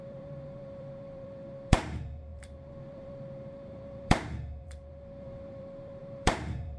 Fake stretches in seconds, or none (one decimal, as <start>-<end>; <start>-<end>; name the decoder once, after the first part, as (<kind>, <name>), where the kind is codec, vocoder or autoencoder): 0.0-6.8 (vocoder, BigVGAN v2)